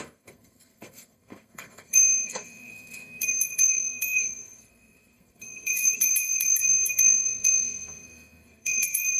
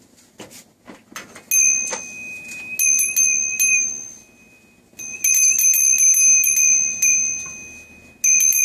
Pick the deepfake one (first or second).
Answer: first